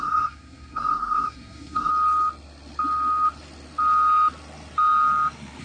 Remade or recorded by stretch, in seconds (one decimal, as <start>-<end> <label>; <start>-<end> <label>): 0.0-1.9 remade; 1.9-5.6 recorded